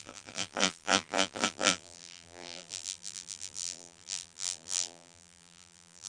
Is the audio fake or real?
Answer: fake